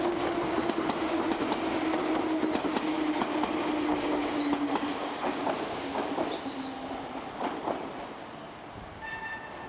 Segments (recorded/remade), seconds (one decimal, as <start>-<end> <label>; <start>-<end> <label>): 0.0-3.9 recorded; 3.9-4.4 remade; 4.4-5.0 recorded; 5.0-6.1 remade; 6.1-9.7 recorded